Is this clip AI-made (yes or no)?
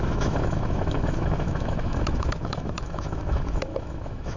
yes